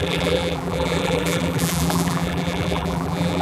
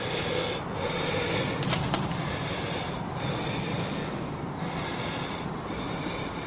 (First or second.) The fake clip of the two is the first